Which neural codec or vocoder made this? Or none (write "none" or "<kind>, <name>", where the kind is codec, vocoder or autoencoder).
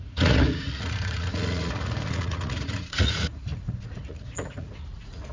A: vocoder, Vocos